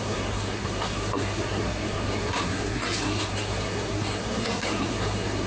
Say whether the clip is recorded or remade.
remade